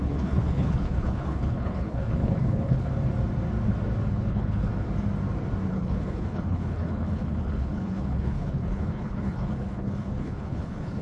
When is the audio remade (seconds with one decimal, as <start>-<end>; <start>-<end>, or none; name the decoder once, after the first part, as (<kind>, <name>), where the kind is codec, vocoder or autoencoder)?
0.0-2.9 (codec, HILCodec); 4.1-4.7; 5.7-11.0